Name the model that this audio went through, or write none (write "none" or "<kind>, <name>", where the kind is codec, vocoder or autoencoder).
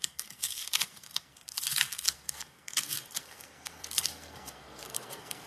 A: codec, SNAC